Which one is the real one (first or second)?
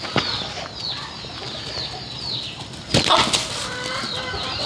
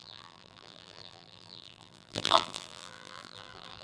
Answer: first